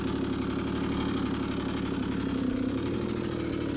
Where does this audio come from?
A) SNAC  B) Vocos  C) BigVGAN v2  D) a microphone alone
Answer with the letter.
D